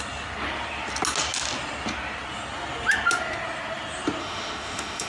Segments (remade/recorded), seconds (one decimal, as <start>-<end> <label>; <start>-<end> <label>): 0.0-4.2 recorded; 4.2-5.1 remade